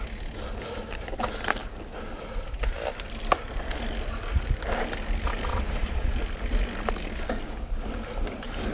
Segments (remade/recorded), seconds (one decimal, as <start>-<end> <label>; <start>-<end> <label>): 0.0-5.5 recorded; 5.5-6.1 remade; 6.1-8.7 recorded